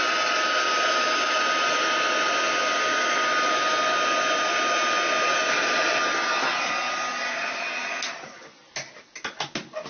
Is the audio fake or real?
real